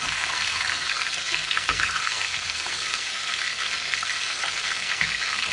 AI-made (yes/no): yes